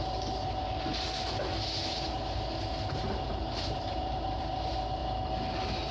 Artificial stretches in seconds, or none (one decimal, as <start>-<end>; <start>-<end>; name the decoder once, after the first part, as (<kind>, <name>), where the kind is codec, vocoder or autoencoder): 3.0-4.4 (vocoder, BigVGAN v2)